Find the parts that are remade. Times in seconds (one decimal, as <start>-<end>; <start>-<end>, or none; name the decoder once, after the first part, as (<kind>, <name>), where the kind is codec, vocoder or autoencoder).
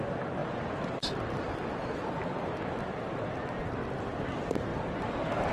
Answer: none